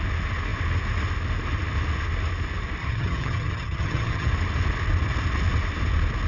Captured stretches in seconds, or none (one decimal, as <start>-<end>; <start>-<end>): 0.0-2.8; 4.3-6.3